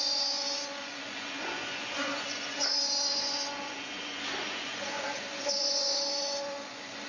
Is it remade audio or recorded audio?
remade